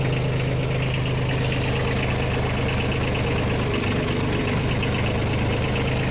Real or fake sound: real